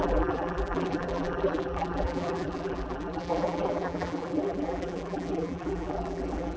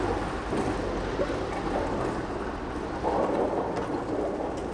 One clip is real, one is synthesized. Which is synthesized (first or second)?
first